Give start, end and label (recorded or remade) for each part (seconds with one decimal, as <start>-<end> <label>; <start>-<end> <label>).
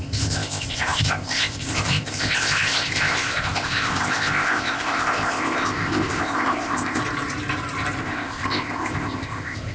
0.0-7.0 remade; 7.0-8.0 recorded; 8.0-9.7 remade